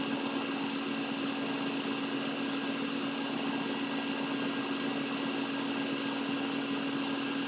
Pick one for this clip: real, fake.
real